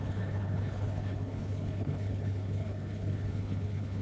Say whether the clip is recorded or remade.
remade